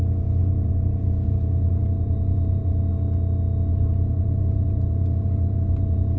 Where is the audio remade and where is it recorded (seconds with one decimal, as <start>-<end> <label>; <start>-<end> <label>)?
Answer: 0.0-0.4 recorded; 0.4-2.9 remade; 2.9-3.7 recorded; 3.7-6.2 remade